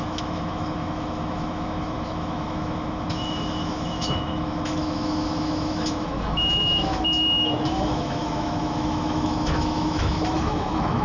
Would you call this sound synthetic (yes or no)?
yes